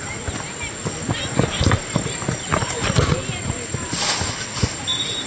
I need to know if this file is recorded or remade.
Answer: recorded